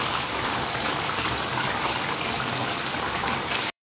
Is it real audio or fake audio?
fake